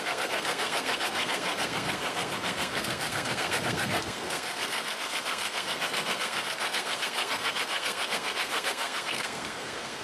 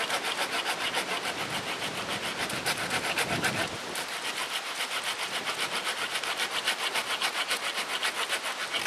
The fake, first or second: first